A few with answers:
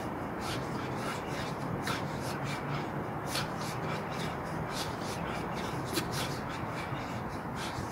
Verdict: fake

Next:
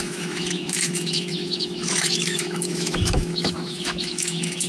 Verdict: fake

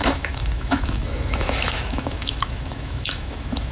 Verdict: fake